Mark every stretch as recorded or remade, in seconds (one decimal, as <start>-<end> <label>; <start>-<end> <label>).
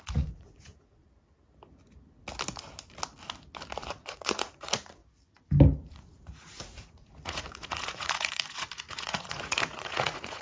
0.0-1.0 remade; 1.0-3.8 recorded; 3.8-5.0 remade; 5.0-5.9 recorded; 5.9-10.4 remade